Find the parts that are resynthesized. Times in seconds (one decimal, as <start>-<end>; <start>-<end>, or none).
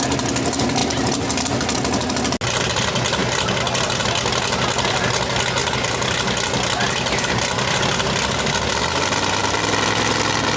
none